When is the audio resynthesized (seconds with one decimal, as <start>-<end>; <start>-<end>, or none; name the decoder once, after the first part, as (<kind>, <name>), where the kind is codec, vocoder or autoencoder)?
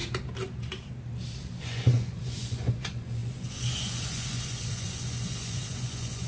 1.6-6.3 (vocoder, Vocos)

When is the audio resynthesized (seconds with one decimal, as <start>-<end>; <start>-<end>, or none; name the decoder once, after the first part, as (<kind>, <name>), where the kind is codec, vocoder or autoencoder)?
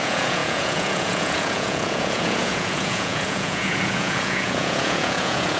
0.0-5.6 (vocoder, Vocos)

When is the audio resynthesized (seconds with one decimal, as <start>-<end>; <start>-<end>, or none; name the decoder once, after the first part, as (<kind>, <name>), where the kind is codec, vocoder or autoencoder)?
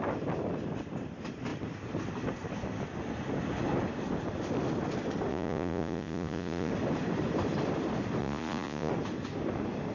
5.3-6.7 (vocoder, Vocos); 8.2-8.9